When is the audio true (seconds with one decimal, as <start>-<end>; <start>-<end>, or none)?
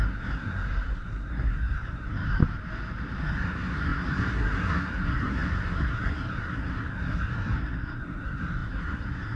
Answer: 2.4-3.2